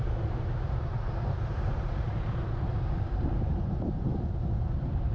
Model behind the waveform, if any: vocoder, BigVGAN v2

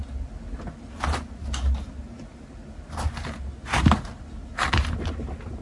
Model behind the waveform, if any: none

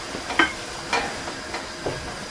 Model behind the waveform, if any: vocoder, BigVGAN v2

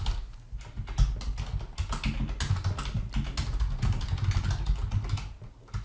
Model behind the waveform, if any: none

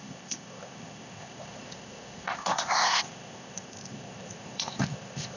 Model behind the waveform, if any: codec, ZipCodec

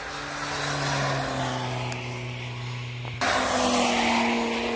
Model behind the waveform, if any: none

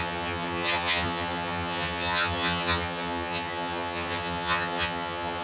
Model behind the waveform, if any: vocoder, HiFi-GAN